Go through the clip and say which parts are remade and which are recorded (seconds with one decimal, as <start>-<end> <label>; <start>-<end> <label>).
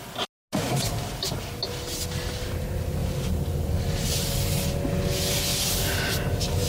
0.0-6.7 recorded